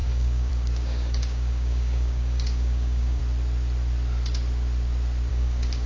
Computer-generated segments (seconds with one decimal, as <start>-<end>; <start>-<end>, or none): 0.0-3.2; 5.3-5.9